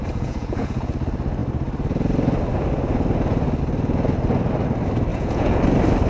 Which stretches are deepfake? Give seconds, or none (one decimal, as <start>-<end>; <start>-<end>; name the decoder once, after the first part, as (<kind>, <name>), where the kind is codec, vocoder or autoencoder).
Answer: 0.0-0.9 (vocoder, Vocos); 5.1-5.6